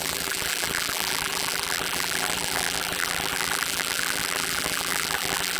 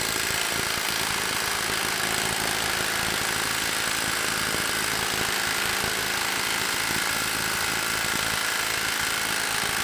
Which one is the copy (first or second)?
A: first